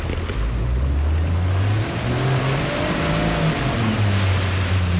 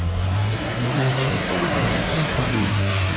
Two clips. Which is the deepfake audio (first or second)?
second